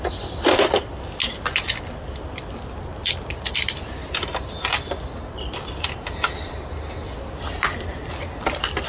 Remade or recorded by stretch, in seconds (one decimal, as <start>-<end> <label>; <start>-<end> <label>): 0.0-2.9 recorded; 2.9-4.1 remade; 4.1-4.7 recorded; 4.7-8.1 remade; 8.1-8.9 recorded